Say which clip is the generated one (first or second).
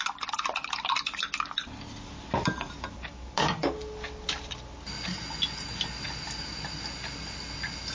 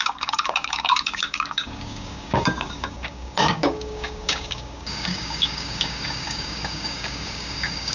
second